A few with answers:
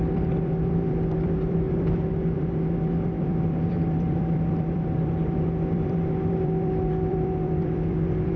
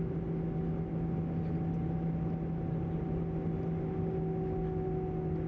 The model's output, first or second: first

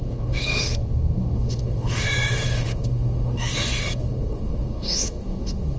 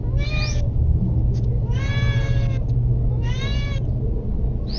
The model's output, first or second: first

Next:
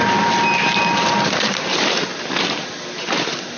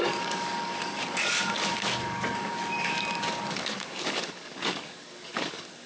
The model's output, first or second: second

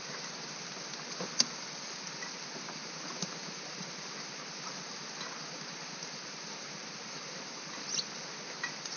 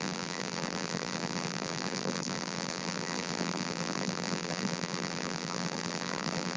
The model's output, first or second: second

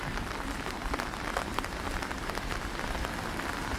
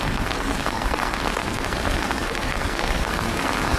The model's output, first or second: second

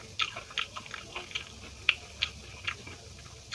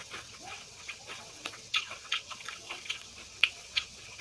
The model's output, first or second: second